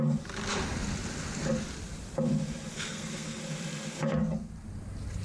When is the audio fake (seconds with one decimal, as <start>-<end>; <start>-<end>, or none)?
2.7-3.4